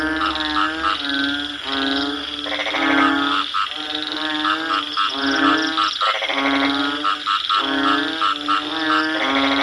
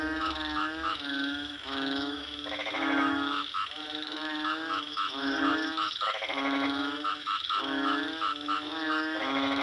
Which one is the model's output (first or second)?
second